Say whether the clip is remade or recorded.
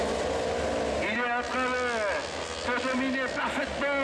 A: recorded